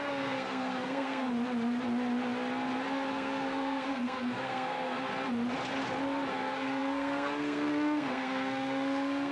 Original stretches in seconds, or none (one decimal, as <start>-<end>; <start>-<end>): 1.3-3.1; 5.1-6.3